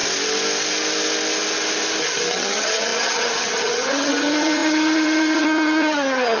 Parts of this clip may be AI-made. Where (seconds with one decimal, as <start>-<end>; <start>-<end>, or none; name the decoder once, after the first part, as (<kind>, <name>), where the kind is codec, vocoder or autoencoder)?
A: 2.0-6.4 (vocoder, HiFi-GAN)